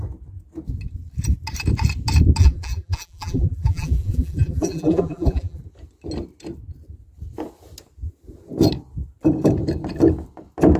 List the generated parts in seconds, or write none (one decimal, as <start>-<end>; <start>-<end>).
2.4-5.6